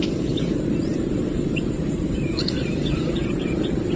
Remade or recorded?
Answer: recorded